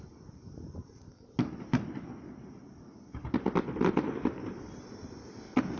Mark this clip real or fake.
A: real